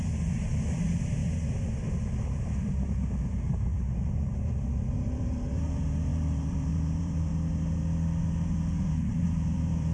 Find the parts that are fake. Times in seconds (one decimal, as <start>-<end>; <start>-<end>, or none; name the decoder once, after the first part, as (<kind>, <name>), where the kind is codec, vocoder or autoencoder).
0.0-1.2 (vocoder, BigVGAN v2); 2.3-7.3; 8.8-9.9